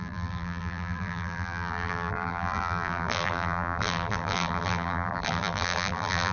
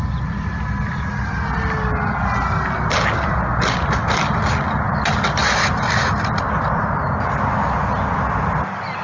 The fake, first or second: first